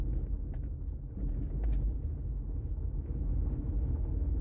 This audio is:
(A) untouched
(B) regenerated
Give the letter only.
A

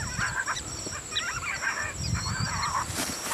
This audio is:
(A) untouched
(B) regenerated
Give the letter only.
B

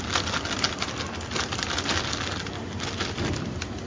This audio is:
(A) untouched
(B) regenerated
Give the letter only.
A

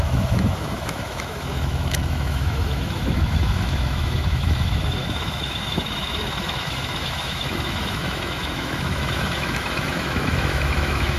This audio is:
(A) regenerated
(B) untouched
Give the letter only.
A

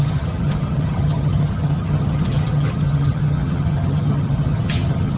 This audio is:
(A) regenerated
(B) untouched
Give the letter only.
A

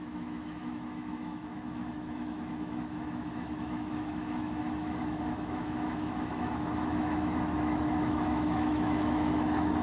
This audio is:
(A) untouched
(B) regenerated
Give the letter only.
B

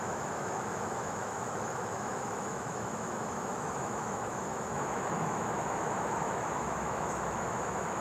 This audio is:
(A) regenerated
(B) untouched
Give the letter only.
A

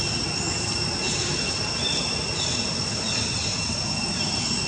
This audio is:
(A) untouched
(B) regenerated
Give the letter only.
A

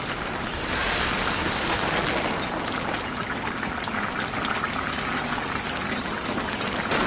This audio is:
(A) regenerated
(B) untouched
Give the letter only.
B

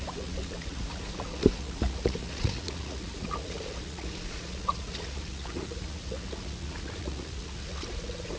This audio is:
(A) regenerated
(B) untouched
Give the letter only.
A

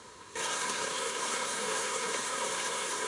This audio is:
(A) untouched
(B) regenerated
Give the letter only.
B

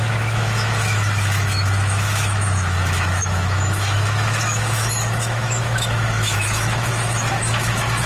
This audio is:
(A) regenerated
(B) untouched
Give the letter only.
A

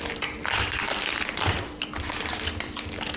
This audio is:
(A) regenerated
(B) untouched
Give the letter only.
A